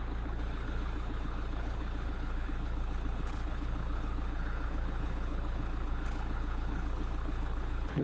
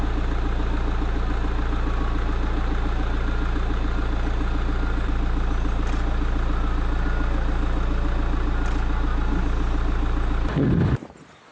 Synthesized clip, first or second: first